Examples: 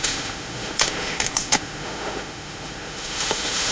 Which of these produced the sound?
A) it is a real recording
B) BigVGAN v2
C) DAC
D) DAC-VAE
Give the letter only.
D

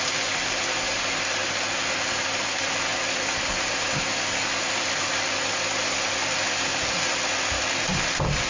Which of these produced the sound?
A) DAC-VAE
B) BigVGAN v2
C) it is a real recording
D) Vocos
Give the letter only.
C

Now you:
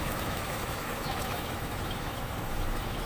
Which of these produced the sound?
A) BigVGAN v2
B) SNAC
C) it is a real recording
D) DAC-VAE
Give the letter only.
D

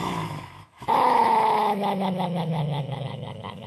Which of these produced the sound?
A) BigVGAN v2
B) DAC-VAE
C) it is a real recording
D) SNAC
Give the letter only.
B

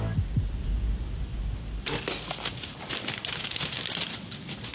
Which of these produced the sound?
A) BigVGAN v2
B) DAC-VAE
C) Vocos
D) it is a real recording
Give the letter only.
D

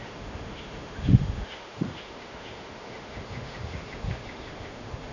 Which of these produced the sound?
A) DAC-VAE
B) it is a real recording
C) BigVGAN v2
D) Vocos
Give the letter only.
A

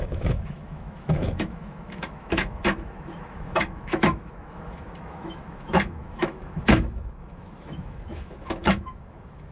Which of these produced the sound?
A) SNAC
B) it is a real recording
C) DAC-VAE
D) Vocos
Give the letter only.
C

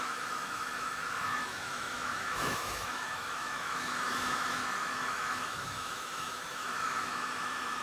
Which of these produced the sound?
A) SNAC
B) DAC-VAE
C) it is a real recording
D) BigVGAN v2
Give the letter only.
B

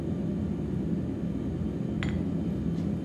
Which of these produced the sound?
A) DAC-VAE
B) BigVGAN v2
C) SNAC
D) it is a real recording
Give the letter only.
D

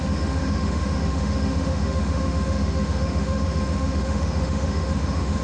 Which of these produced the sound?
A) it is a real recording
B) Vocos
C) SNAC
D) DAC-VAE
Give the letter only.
D